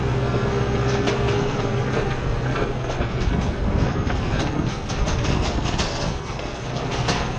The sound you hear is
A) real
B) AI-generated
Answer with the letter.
B